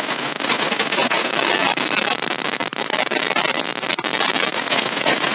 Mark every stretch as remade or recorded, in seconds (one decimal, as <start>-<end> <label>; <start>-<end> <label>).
0.0-1.3 remade; 1.3-4.5 recorded; 4.5-5.3 remade